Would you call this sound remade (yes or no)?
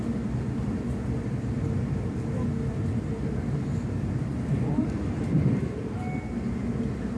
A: no